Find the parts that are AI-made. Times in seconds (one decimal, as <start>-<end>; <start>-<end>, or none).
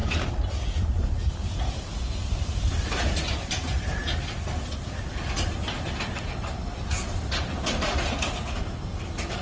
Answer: none